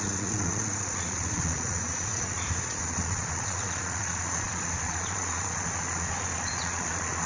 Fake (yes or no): yes